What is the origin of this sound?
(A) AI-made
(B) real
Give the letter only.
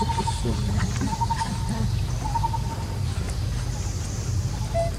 B